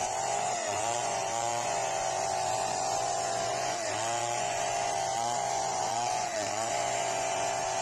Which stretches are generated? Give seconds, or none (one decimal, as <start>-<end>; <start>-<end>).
0.0-7.8

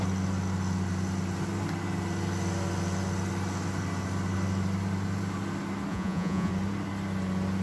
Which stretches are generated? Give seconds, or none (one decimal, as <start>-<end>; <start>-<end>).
5.9-6.5

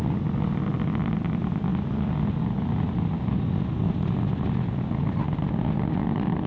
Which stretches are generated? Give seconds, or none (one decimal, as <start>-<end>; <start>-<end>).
none

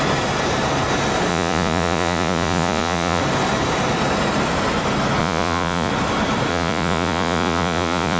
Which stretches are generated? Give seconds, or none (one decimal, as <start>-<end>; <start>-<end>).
1.3-3.2; 5.2-5.9; 6.5-8.2